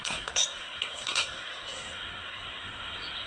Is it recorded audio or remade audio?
remade